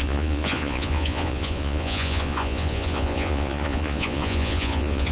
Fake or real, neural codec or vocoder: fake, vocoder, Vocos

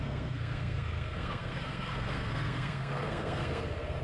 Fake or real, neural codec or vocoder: fake, codec, SNAC